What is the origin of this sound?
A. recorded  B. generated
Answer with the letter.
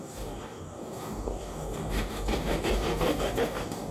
B